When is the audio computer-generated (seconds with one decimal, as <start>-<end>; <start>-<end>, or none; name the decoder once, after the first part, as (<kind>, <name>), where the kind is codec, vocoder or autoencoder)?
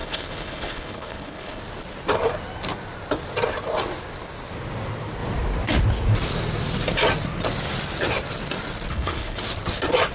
0.0-1.6 (codec, HILCodec); 8.9-9.4